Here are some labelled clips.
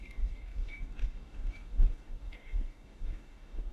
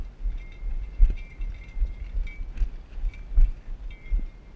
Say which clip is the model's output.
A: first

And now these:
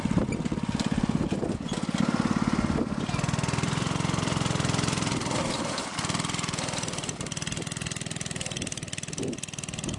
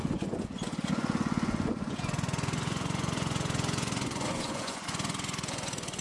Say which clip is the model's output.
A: second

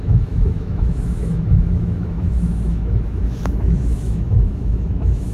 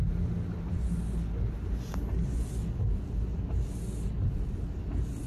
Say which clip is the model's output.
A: first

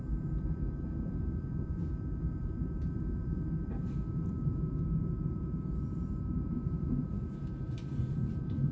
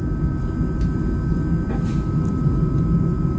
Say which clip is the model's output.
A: first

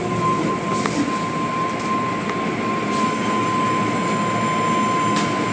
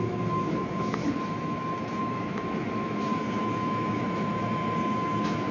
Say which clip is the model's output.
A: second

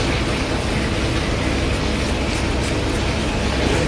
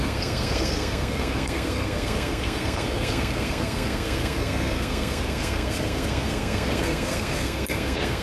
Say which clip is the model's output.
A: second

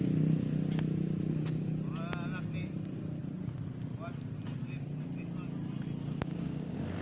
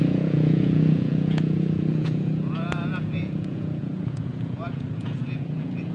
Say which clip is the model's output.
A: second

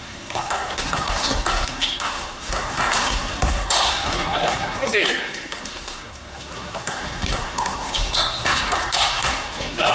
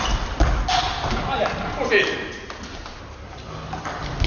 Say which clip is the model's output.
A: first